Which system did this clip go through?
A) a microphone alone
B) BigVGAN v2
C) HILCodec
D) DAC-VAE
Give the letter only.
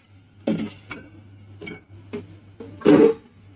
A